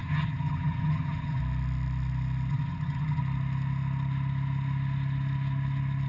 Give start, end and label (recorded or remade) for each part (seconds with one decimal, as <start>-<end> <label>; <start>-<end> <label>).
0.0-1.4 remade; 1.4-2.5 recorded; 2.5-3.2 remade; 3.2-6.1 recorded